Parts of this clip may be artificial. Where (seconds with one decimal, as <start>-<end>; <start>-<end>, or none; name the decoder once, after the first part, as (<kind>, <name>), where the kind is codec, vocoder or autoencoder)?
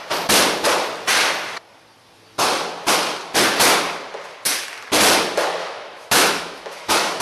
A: 5.6-7.2 (autoencoder, DAC-VAE)